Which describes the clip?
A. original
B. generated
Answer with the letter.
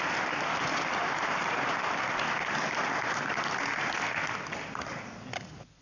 A